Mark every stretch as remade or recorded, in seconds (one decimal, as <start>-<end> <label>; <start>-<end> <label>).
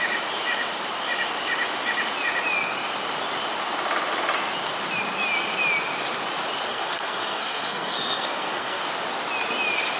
0.0-6.7 recorded; 6.7-8.8 remade; 8.8-10.0 recorded